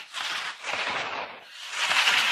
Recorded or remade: recorded